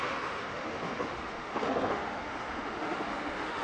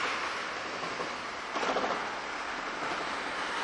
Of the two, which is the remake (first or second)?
first